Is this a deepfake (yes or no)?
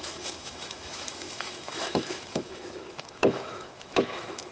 yes